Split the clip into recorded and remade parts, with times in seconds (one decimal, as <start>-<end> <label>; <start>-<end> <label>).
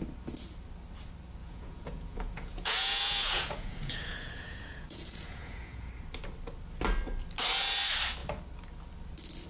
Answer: 0.0-1.4 recorded; 1.4-5.9 remade; 5.9-9.5 recorded